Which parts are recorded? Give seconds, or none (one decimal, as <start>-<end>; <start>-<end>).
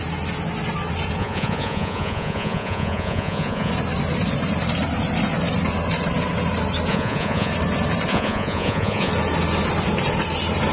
0.0-1.2; 3.7-6.9; 7.5-8.1; 9.1-10.7